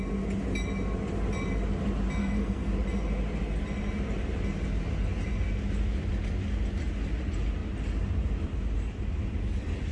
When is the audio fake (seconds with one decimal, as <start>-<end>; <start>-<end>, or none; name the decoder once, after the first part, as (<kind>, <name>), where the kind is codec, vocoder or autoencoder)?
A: 2.2-2.7 (codec, SNAC)